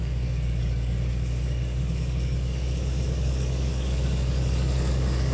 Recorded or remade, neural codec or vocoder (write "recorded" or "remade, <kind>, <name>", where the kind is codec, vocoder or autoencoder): remade, codec, DAC